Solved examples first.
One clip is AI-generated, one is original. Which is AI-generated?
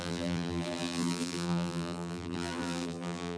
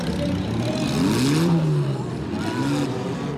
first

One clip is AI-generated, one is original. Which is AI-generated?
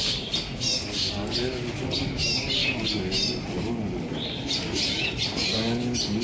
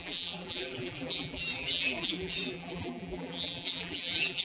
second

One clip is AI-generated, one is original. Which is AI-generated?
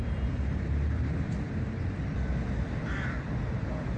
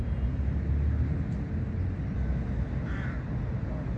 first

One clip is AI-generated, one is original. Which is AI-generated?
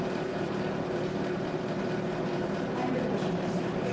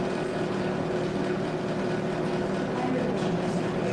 first